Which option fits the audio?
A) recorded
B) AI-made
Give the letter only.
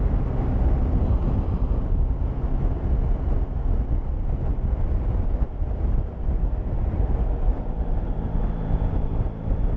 A